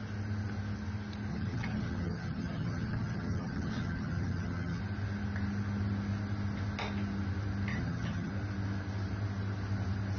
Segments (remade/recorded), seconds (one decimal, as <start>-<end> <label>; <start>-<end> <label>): 0.0-1.3 recorded; 1.3-4.8 remade; 4.8-7.7 recorded; 7.7-8.3 remade; 8.3-10.2 recorded

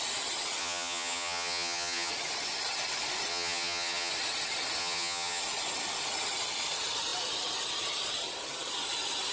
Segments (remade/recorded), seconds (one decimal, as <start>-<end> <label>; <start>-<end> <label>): 0.0-0.6 recorded; 0.6-2.1 remade; 2.1-3.3 recorded; 3.3-4.1 remade; 4.1-4.8 recorded; 4.8-5.4 remade; 5.4-9.3 recorded

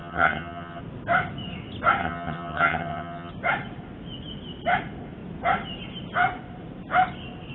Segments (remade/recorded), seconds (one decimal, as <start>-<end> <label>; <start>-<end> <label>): 0.0-0.8 remade; 0.8-2.0 recorded; 2.0-3.3 remade; 3.3-7.5 recorded

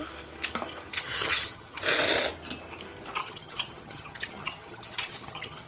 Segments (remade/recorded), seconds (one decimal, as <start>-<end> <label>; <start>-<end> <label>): 0.0-0.9 recorded; 0.9-1.8 remade; 1.8-3.2 recorded; 3.2-5.7 remade

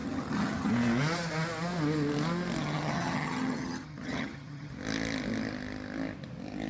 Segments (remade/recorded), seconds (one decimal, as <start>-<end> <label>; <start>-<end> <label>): 0.0-0.7 remade; 0.7-2.6 recorded; 2.6-4.7 remade; 4.7-6.7 recorded